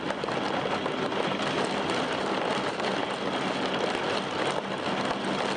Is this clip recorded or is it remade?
recorded